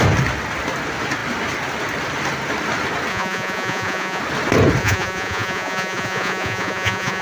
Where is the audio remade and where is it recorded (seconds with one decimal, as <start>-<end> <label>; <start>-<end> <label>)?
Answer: 0.0-3.1 recorded; 3.1-4.2 remade; 4.2-4.8 recorded; 4.8-7.2 remade